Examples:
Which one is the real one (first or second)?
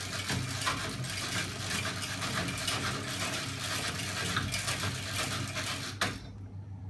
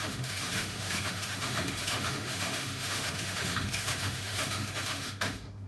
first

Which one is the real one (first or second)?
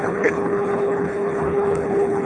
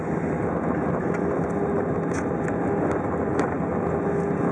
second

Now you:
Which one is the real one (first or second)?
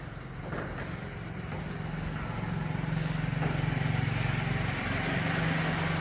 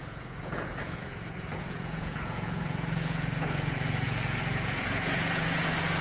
first